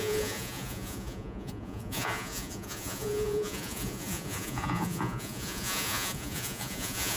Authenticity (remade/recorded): remade